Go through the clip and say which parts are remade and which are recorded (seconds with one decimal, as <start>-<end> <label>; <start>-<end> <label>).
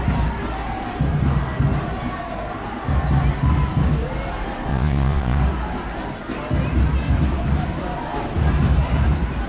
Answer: 0.0-4.7 recorded; 4.7-5.4 remade; 5.4-9.5 recorded